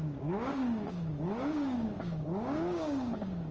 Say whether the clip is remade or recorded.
remade